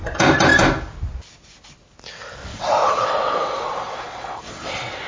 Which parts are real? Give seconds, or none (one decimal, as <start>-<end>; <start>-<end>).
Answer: 0.0-2.5